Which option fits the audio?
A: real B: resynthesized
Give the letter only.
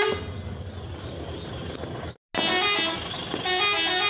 A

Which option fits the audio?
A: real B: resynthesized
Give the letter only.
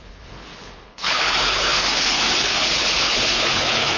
B